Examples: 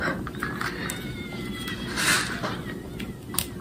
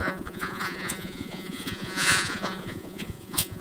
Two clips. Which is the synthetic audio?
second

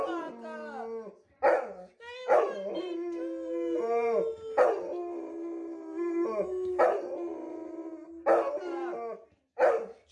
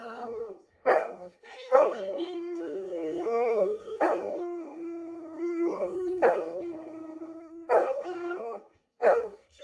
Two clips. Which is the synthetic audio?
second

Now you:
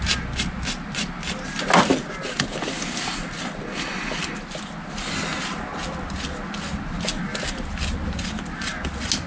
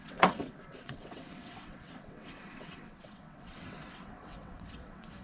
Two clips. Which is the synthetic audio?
second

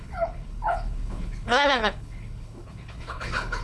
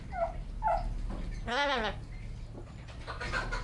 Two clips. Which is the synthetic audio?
first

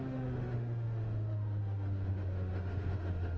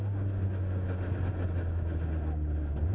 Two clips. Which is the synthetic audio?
first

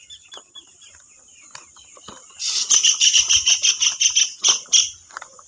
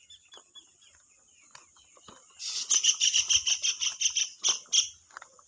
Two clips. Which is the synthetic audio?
first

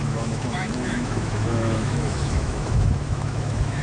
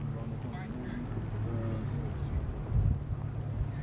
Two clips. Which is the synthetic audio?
first